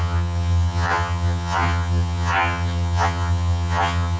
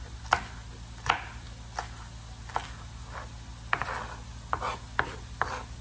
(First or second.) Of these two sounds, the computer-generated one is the first